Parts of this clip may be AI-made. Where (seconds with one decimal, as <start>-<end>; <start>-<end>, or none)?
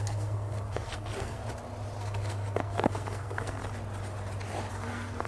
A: 0.0-1.4; 2.0-3.6; 4.7-5.3